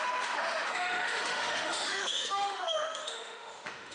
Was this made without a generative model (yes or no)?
no